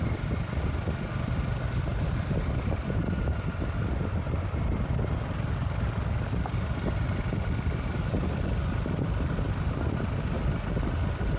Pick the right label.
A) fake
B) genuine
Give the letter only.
A